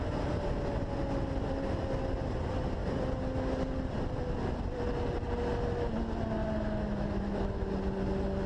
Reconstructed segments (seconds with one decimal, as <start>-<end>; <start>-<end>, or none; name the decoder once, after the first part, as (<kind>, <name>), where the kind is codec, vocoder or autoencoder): 6.4-7.7 (autoencoder, DAC-VAE)